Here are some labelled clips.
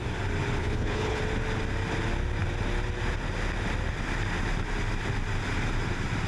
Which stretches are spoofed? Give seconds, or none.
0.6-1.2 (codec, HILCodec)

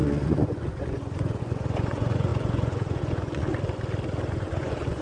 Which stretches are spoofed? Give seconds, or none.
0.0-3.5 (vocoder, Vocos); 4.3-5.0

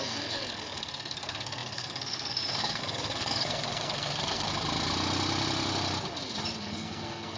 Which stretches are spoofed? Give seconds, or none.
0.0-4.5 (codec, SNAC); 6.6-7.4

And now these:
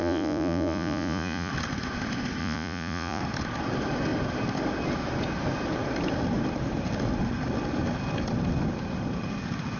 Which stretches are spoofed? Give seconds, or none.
0.0-1.5 (vocoder, Vocos); 2.4-3.2

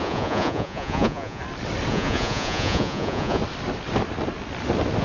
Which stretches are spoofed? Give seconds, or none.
0.0-1.4 (vocoder, Vocos); 1.9-3.4

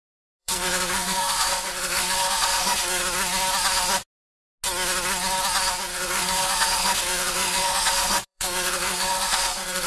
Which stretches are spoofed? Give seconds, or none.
0.4-3.0 (codec, SNAC); 5.9-9.9